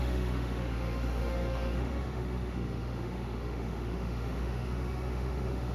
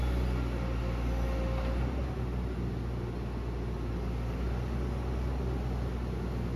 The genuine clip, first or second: second